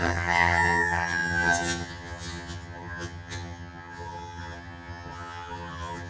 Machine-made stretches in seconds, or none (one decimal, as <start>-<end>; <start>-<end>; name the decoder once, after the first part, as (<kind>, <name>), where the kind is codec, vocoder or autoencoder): 0.0-6.1 (vocoder, HiFi-GAN)